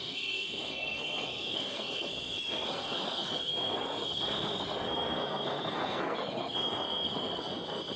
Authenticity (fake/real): fake